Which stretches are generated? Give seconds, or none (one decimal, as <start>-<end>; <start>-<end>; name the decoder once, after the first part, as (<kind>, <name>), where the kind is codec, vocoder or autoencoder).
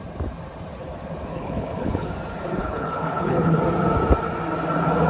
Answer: 1.3-2.1 (codec, HILCodec); 2.6-3.6